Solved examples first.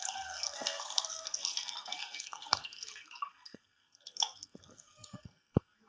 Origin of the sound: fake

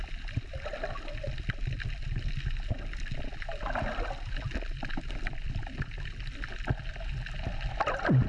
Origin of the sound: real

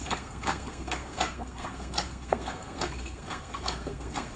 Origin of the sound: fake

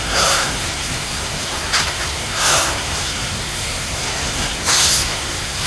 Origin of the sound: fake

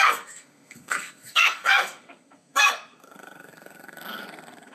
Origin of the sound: fake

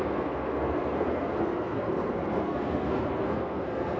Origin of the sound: fake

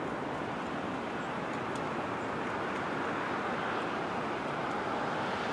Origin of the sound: real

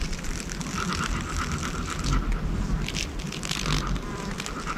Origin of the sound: real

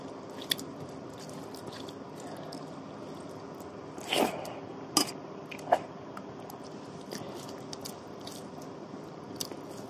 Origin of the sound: real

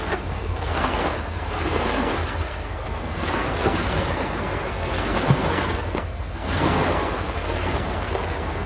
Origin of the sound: fake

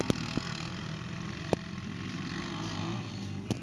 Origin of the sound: real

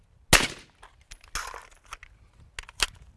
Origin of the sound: real